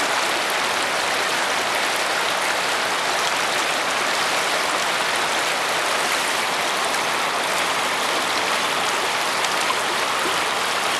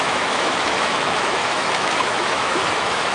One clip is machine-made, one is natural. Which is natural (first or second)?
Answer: first